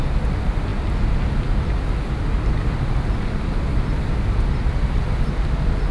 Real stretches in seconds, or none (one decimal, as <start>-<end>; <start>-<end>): 0.0-5.9